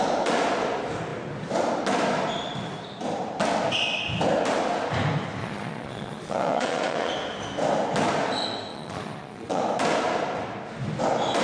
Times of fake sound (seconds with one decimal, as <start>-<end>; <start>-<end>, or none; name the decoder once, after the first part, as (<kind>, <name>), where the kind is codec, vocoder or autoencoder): 5.4-7.1 (vocoder, Vocos); 8.7-9.6